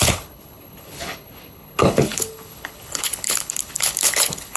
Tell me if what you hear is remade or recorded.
remade